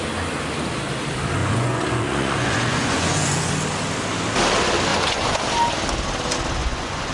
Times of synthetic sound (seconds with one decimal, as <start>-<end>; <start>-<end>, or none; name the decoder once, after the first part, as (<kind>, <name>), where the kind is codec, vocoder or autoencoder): 1.4-3.5 (vocoder, Vocos); 4.9-5.4; 6.6-7.1